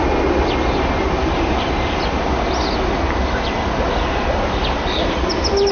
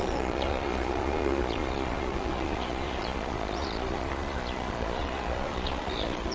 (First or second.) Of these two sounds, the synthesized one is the second